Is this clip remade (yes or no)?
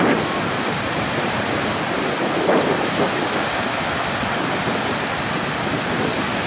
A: no